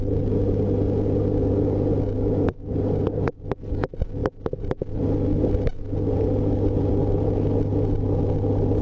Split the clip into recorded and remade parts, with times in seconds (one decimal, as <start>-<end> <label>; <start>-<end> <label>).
0.0-8.8 recorded